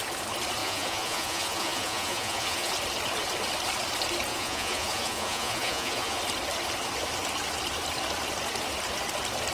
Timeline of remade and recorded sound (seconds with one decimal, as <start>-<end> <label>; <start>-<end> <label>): 0.0-0.6 recorded; 0.6-2.7 remade; 2.7-4.3 recorded; 4.3-6.2 remade; 6.2-9.5 recorded